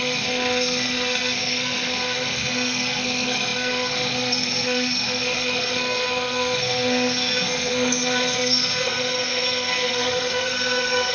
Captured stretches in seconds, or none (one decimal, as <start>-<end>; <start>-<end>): none